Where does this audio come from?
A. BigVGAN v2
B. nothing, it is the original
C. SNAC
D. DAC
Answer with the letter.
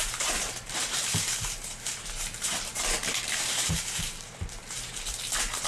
A